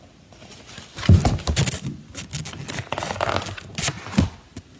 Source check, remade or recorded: recorded